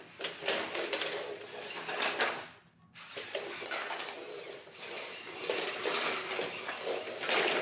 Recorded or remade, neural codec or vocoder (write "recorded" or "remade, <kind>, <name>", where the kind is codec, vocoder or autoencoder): recorded